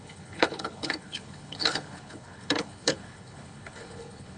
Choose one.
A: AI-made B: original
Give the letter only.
A